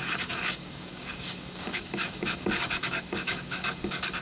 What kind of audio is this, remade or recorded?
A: remade